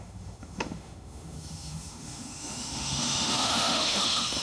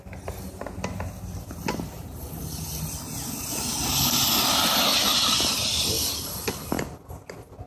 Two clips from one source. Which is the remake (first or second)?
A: first